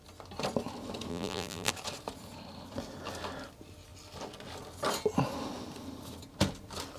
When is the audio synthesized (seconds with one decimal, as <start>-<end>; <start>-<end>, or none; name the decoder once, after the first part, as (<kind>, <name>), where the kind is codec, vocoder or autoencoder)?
1.1-1.7 (vocoder, BigVGAN v2)